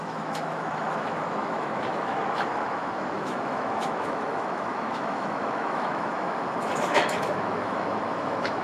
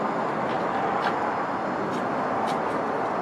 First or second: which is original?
second